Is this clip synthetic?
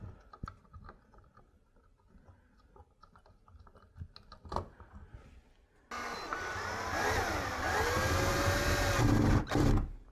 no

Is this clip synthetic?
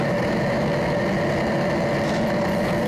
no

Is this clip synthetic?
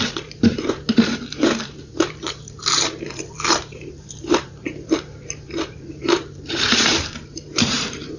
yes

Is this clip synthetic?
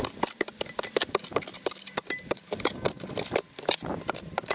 no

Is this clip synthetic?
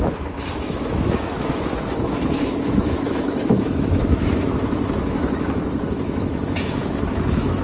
yes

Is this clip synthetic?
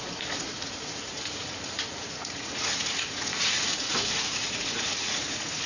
yes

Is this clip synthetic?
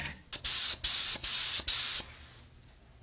no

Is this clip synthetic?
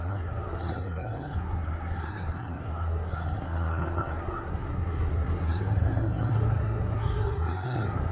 yes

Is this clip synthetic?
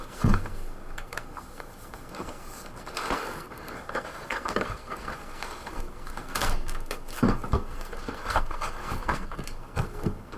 yes